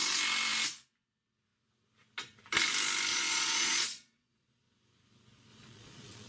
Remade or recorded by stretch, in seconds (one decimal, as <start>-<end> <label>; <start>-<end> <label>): 0.0-3.1 recorded; 3.1-4.6 remade; 4.6-5.5 recorded; 5.5-6.3 remade